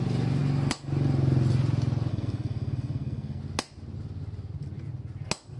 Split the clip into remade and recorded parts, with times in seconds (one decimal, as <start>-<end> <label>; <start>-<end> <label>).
0.0-2.1 recorded; 2.1-3.4 remade; 3.4-5.6 recorded